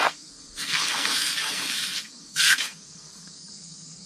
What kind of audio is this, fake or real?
fake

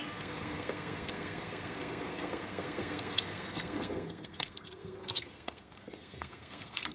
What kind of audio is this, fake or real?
fake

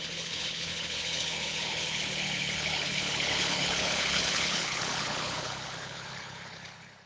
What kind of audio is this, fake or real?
fake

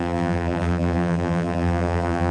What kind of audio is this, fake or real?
fake